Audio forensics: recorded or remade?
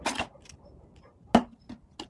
recorded